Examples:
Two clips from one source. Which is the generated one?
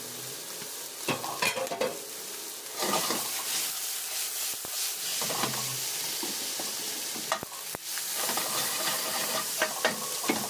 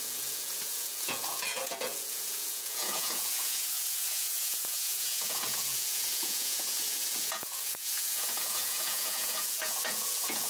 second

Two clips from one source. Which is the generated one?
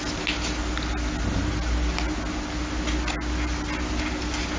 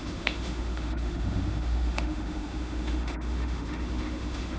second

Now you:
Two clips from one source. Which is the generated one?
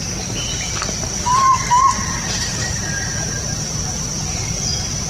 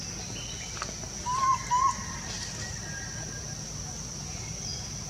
first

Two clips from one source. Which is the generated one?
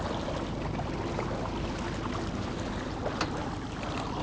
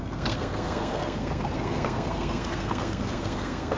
second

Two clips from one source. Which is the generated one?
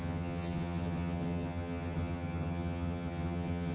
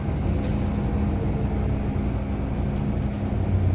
first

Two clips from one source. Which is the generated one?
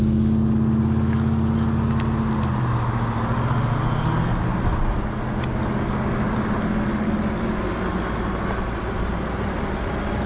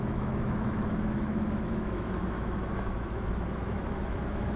second